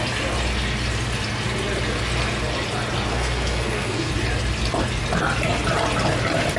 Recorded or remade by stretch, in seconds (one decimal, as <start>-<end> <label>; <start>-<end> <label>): 0.0-3.1 recorded; 3.1-4.1 remade; 4.1-6.6 recorded